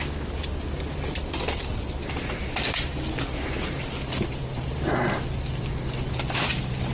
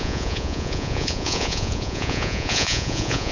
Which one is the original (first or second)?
first